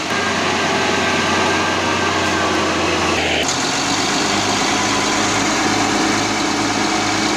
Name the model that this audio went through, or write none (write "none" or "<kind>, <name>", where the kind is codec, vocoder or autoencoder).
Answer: none